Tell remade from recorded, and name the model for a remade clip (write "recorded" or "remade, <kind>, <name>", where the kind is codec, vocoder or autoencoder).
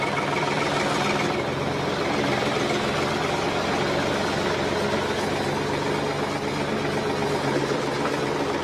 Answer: recorded